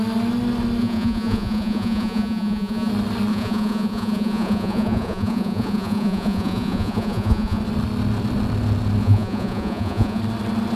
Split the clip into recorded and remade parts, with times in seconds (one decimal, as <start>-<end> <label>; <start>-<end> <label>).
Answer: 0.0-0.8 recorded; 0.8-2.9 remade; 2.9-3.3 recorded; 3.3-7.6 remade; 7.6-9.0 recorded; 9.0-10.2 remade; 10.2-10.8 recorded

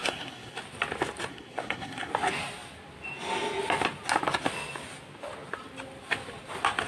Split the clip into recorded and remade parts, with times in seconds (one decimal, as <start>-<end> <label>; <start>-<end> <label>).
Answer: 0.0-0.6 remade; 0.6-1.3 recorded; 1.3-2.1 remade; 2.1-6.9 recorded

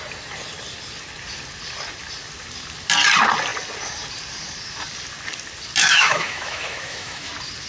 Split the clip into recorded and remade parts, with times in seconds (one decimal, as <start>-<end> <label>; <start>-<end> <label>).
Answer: 0.0-5.8 recorded; 5.8-7.3 remade; 7.3-7.7 recorded

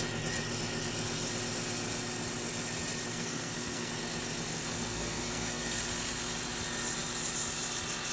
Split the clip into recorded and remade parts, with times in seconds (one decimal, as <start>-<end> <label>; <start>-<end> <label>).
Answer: 0.0-3.1 recorded; 3.1-3.9 remade; 3.9-4.5 recorded; 4.5-5.8 remade; 5.8-8.1 recorded

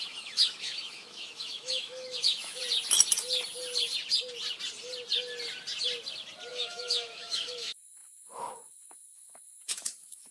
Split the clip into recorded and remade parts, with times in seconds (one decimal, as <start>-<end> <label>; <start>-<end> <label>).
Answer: 0.0-2.6 remade; 2.6-6.5 recorded; 6.5-10.3 remade

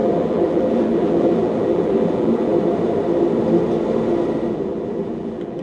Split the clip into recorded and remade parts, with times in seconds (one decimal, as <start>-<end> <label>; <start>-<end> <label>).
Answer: 0.0-2.5 remade; 2.5-4.5 recorded; 4.5-5.6 remade